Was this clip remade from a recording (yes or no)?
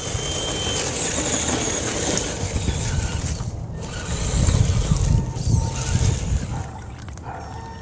no